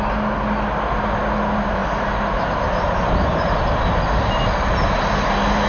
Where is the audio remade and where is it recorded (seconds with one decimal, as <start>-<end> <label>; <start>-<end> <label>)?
0.0-5.7 recorded